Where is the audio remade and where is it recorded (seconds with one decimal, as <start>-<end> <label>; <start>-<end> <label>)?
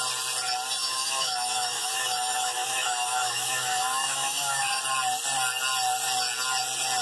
0.0-0.8 recorded; 0.8-4.8 remade; 4.8-7.0 recorded